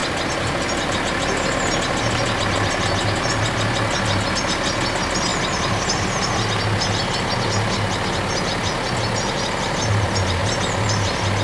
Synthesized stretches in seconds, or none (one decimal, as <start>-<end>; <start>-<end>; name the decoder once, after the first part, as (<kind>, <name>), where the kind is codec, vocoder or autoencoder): 10.4-10.9 (vocoder, BigVGAN v2)

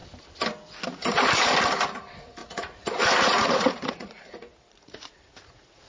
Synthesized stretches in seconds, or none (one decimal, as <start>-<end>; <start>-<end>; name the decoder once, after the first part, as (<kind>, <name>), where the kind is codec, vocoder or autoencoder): 2.4-5.9 (vocoder, Vocos)

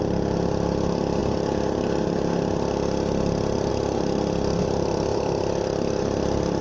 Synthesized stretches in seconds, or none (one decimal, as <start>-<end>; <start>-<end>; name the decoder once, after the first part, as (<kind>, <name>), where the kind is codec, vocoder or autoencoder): none

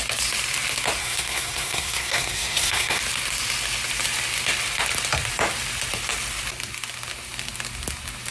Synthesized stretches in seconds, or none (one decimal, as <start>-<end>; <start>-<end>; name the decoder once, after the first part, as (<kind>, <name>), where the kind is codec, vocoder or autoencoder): 1.0-3.0 (codec, SNAC)

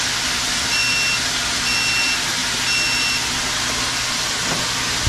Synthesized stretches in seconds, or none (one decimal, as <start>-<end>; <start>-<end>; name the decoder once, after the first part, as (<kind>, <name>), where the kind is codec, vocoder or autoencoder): none

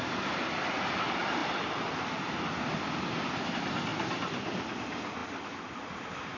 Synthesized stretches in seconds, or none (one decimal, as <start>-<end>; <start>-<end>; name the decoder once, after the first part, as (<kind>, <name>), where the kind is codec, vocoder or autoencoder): none

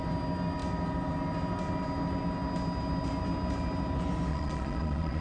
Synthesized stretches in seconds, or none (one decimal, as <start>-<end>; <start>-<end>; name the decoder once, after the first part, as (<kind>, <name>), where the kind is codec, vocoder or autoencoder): 4.3-5.2 (vocoder, Vocos)